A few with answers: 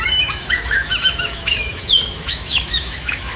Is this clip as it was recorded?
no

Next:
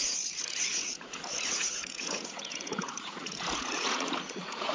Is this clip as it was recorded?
no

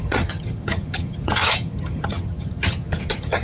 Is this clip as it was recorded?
no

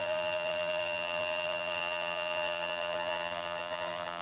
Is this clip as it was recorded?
no